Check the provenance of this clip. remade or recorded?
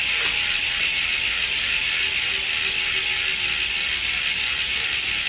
recorded